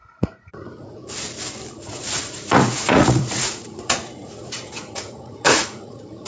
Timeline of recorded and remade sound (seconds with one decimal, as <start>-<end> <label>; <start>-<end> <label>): 0.0-1.0 remade; 1.0-1.7 recorded; 1.7-6.3 remade